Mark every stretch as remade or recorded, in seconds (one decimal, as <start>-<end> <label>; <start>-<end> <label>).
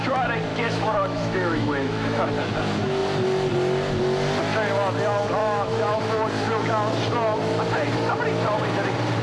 0.0-0.5 recorded; 0.5-2.3 remade; 2.3-5.4 recorded; 5.4-6.0 remade; 6.0-9.2 recorded